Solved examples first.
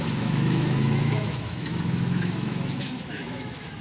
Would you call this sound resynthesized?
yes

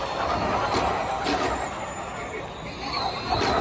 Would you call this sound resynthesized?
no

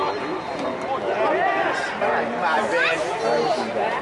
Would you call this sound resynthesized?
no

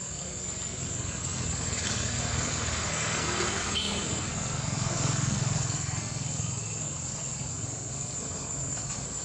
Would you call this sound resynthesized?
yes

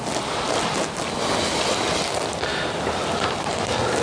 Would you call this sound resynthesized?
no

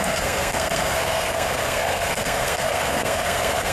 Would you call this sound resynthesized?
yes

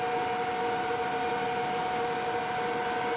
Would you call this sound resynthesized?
no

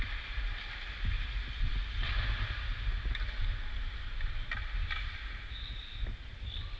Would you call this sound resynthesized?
no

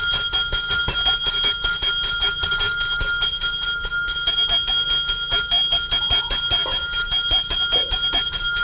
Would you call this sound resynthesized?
no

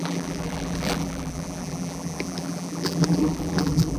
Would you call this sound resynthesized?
yes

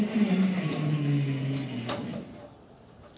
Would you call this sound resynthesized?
no